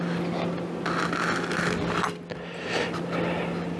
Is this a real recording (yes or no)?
yes